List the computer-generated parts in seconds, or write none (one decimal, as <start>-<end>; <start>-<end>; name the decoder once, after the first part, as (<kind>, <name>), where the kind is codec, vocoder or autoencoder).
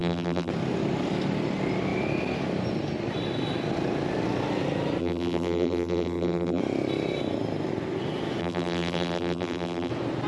0.0-0.5 (vocoder, BigVGAN v2); 5.0-6.6; 8.4-9.9